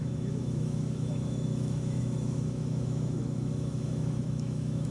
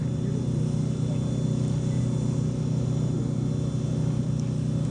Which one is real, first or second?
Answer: second